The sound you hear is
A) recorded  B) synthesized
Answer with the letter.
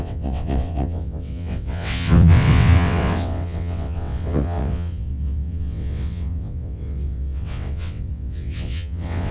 B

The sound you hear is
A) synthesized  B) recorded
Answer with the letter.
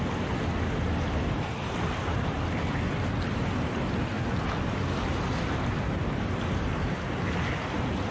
B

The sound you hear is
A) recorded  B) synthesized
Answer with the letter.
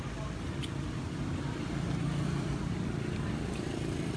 B